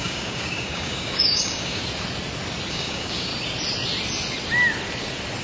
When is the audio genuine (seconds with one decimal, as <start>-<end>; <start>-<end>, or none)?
1.8-2.7; 3.3-5.4